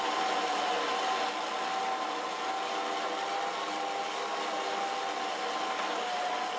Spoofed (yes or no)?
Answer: no